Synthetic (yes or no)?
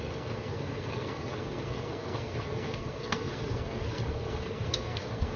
yes